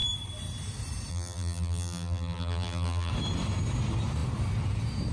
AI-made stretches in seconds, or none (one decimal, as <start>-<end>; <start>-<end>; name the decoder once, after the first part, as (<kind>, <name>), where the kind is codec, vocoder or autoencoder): 1.1-3.1 (vocoder, BigVGAN v2)